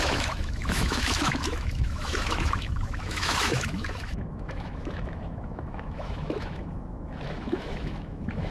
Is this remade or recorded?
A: remade